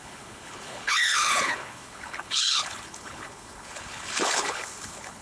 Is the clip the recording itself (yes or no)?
no